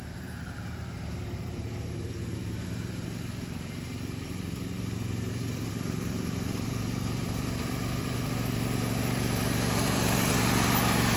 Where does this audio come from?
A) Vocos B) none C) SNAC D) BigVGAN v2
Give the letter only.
D